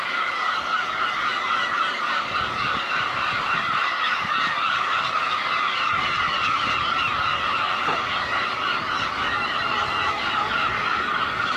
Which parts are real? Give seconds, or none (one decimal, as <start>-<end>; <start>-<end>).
none

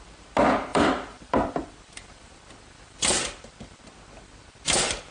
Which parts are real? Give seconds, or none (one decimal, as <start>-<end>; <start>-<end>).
0.0-0.7; 3.8-5.1

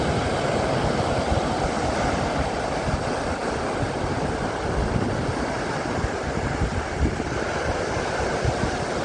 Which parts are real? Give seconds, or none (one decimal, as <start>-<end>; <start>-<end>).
3.4-8.1

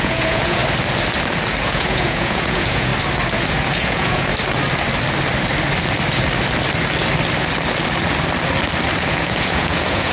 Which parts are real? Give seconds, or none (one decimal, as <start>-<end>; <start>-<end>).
0.6-1.6; 2.9-3.5; 4.3-9.1

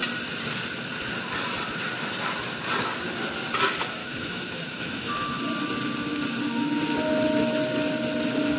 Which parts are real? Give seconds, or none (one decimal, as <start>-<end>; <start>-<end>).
0.0-4.0; 5.4-8.6